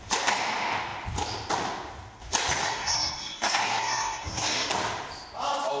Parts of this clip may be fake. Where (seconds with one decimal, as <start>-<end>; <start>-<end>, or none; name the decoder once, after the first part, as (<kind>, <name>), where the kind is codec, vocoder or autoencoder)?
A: 2.6-4.7 (codec, SNAC)